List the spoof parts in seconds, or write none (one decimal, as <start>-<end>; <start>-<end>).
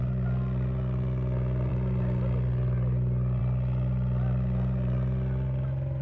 none